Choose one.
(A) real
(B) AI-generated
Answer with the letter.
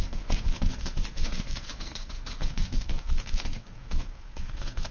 B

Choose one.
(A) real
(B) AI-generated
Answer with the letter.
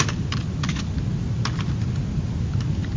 A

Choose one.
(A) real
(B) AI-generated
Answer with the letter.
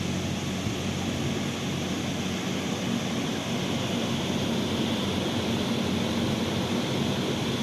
A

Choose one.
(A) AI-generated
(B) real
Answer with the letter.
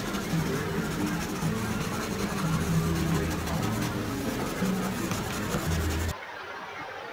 B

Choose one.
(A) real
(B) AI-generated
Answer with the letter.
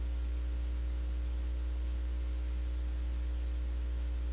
A